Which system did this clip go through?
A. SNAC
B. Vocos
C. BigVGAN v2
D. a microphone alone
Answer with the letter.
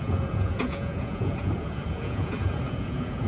B